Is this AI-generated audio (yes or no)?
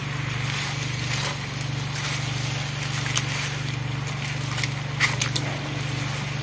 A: no